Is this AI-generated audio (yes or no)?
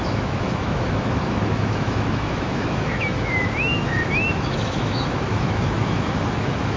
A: yes